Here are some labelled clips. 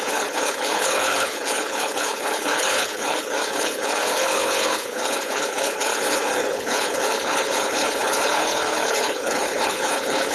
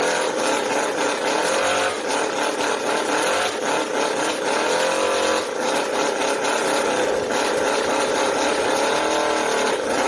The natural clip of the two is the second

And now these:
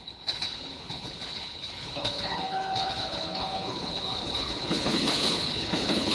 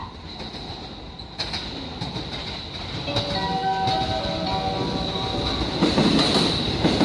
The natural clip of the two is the second